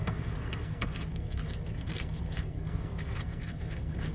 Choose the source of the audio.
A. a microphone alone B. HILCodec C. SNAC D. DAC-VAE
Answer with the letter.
C